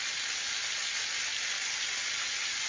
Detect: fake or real real